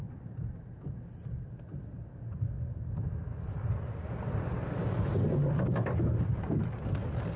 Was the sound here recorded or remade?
recorded